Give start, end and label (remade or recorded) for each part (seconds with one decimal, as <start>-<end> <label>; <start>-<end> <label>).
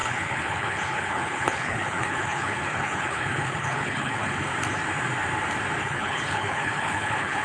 0.0-4.5 remade; 4.5-5.8 recorded; 5.8-7.4 remade